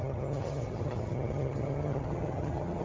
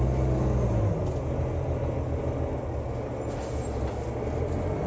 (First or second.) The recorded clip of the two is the second